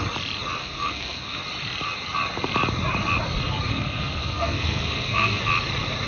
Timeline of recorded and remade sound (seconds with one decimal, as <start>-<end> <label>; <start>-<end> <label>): 0.0-0.6 recorded; 0.6-1.4 remade; 1.4-3.7 recorded; 3.7-5.4 remade; 5.4-6.1 recorded